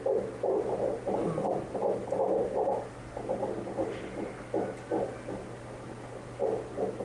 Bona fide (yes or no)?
yes